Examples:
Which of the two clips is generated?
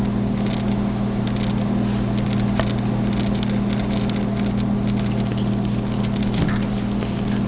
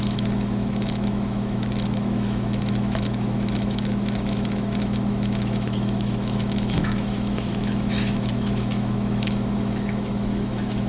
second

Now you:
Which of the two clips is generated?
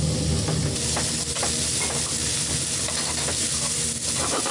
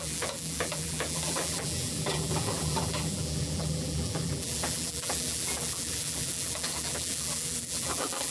second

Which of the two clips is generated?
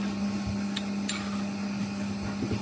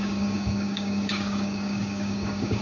second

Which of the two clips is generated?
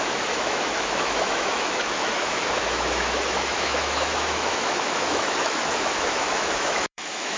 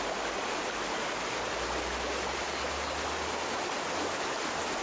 first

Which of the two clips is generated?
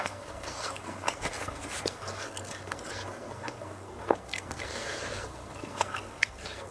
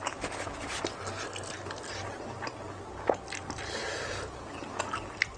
first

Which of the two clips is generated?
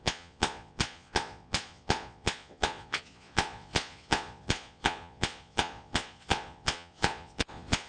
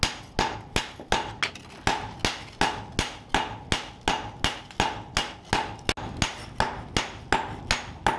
first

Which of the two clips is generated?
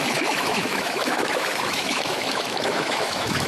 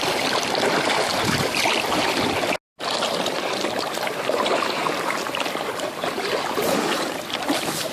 first